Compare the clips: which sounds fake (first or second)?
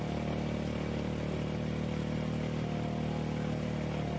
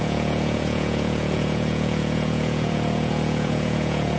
second